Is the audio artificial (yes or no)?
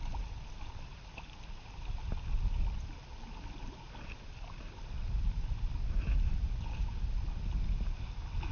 no